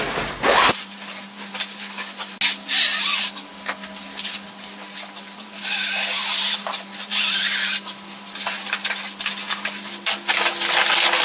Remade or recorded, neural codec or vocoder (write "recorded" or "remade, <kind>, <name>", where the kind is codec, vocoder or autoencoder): recorded